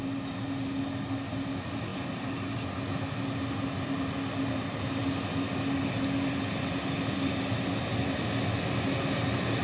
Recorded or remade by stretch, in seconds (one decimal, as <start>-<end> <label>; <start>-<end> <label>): 0.0-9.6 recorded